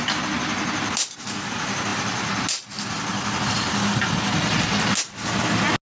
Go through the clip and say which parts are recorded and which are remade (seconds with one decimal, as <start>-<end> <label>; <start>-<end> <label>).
0.0-5.8 recorded